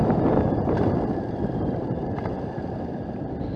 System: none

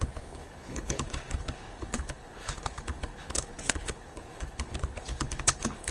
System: codec, HILCodec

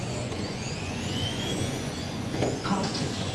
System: vocoder, Vocos